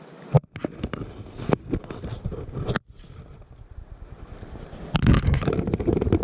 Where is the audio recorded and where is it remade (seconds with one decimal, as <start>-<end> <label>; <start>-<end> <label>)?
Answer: 0.0-6.2 recorded